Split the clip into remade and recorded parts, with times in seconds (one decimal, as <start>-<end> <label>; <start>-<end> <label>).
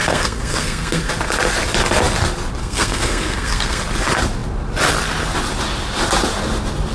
0.0-1.1 remade; 1.1-2.6 recorded; 2.6-3.8 remade; 3.8-6.9 recorded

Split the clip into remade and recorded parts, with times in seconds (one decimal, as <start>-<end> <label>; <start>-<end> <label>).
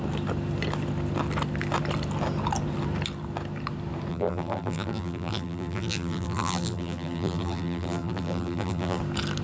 0.0-4.1 recorded; 4.1-9.0 remade; 9.0-9.4 recorded